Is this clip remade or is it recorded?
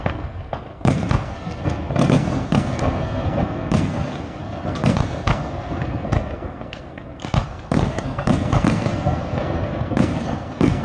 remade